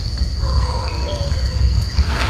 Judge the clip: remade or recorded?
remade